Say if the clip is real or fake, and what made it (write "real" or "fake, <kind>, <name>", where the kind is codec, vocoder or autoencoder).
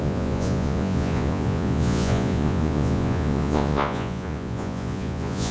fake, vocoder, Vocos